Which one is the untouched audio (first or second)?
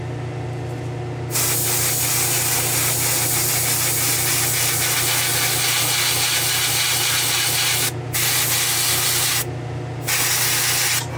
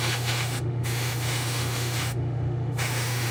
first